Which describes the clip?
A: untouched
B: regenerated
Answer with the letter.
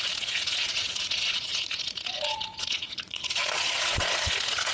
B